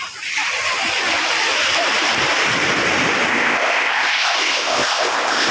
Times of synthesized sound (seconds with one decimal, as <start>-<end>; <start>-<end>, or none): 3.3-5.5